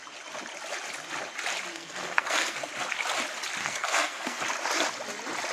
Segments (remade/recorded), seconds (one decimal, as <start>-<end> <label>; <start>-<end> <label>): 0.0-1.7 recorded; 1.7-2.7 remade; 2.7-3.6 recorded; 3.6-4.4 remade; 4.4-5.5 recorded